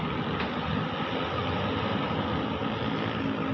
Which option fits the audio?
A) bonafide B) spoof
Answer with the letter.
A